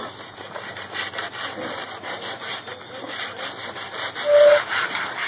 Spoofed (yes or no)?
no